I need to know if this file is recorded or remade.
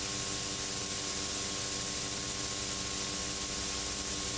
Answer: recorded